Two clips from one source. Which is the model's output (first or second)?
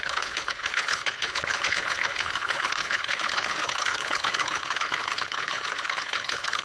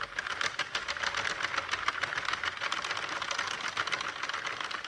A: first